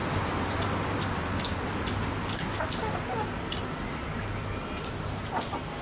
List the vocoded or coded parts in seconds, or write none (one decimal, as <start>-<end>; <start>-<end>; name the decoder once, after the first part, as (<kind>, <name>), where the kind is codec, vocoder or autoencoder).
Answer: none